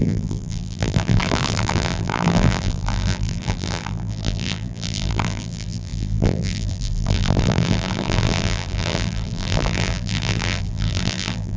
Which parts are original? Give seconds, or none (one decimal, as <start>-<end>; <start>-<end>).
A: none

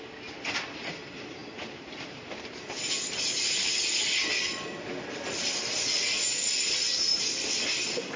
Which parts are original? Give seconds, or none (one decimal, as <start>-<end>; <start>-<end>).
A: 0.0-8.2

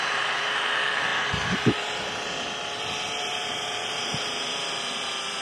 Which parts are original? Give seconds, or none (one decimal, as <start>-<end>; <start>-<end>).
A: none

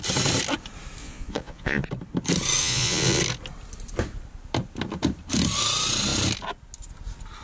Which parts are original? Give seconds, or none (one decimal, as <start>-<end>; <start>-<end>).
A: 0.0-1.0; 1.8-2.6; 3.2-7.4